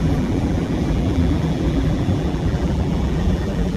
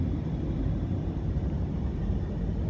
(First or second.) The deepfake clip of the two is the first